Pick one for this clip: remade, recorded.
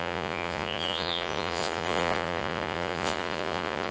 remade